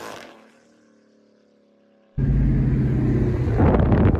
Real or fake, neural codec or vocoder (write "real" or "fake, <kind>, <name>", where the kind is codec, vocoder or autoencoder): real